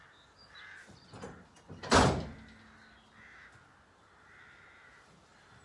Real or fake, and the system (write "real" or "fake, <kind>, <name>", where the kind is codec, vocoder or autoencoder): real